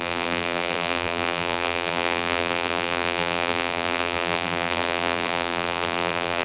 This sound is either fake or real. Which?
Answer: fake